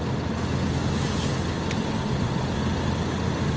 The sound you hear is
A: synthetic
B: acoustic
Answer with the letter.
B